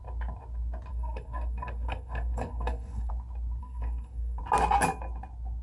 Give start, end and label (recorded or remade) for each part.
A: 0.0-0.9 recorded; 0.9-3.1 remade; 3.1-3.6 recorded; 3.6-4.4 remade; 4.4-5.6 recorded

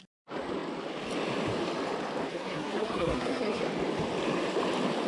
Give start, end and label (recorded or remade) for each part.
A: 0.0-2.3 recorded; 2.3-3.6 remade; 3.6-5.1 recorded

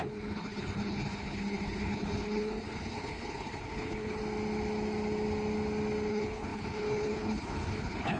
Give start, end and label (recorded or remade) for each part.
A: 0.0-4.2 remade; 4.2-6.1 recorded; 6.1-8.2 remade

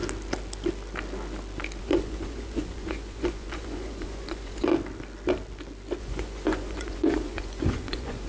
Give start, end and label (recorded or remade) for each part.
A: 0.0-1.8 recorded; 1.8-4.7 remade; 4.7-6.0 recorded; 6.0-8.3 remade

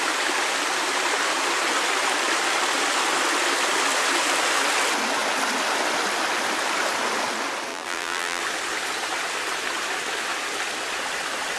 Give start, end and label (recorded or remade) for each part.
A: 0.0-7.7 recorded; 7.7-8.4 remade; 8.4-11.6 recorded

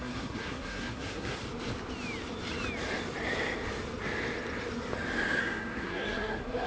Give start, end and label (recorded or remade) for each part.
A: 0.0-1.4 remade; 1.4-5.4 recorded; 5.4-6.7 remade